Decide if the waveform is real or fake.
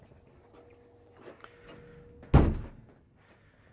real